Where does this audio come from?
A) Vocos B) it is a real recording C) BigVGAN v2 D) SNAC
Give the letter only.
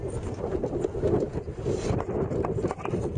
B